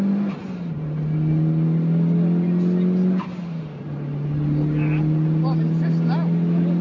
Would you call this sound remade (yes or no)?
no